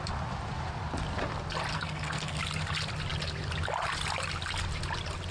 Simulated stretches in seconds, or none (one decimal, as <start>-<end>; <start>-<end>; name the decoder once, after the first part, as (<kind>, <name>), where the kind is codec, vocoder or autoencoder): 1.7-2.4 (codec, SNAC)